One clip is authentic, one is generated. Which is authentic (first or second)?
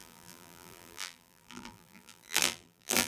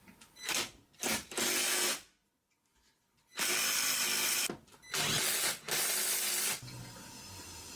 second